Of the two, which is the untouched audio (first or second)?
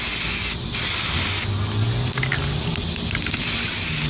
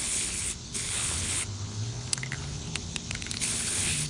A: first